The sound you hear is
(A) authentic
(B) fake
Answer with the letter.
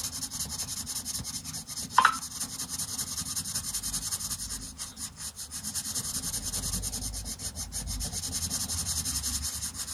A